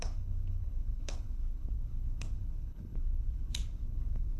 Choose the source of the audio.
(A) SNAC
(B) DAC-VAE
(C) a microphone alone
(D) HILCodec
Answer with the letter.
D